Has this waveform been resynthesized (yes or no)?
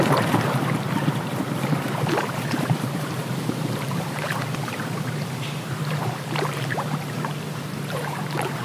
yes